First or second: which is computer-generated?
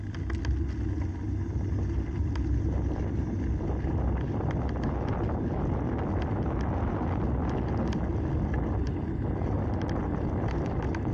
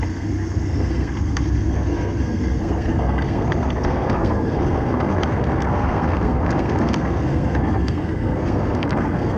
second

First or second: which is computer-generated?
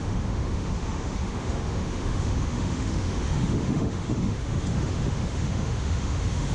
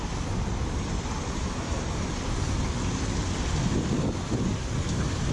first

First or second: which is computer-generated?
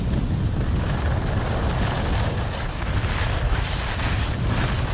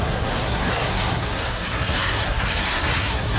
second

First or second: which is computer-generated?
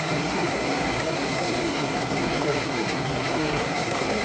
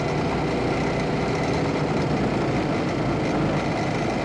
first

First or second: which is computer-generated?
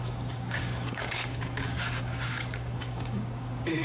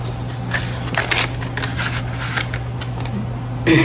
first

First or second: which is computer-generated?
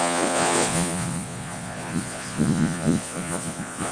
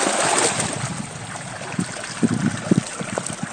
first